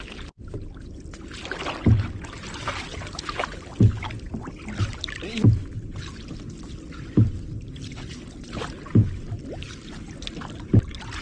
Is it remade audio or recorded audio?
recorded